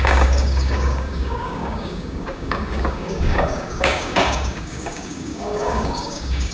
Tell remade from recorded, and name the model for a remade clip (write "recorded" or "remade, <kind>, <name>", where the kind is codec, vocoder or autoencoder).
remade, codec, DAC